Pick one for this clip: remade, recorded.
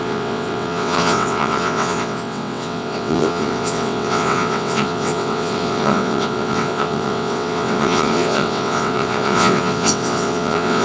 remade